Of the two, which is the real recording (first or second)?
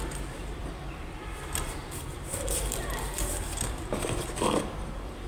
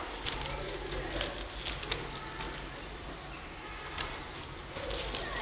second